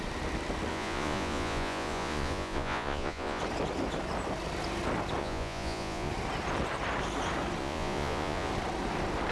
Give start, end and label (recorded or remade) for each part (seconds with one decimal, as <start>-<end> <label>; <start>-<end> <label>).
0.0-0.7 recorded; 0.7-3.4 remade; 3.4-5.2 recorded; 5.2-6.1 remade; 6.1-7.6 recorded; 7.6-8.5 remade; 8.5-9.3 recorded